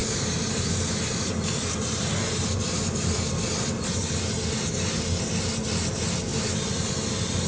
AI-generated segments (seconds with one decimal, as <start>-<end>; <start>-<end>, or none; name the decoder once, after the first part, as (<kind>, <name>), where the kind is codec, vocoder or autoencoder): 0.0-4.5 (vocoder, BigVGAN v2); 6.3-6.9